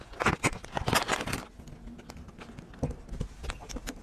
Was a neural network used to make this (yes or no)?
no